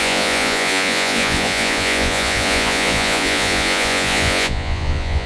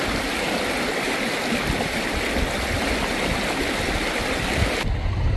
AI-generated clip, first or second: first